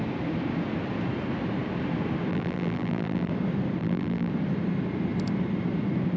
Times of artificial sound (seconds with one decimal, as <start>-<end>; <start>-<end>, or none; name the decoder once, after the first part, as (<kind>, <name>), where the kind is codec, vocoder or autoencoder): 2.3-3.3 (vocoder, BigVGAN v2); 3.8-4.3